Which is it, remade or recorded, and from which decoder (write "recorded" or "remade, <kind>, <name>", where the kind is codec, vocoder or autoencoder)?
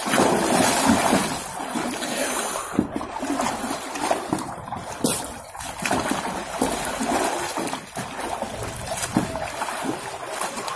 recorded